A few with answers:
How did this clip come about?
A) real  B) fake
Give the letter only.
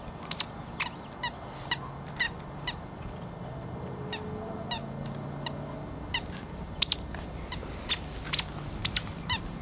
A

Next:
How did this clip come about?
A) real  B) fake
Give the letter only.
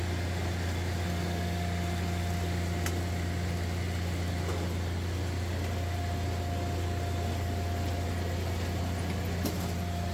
A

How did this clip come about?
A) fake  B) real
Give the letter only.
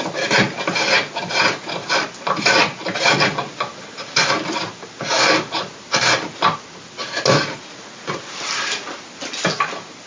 B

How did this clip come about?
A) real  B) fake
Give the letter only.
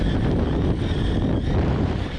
A